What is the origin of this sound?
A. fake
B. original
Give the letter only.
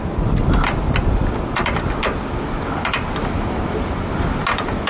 B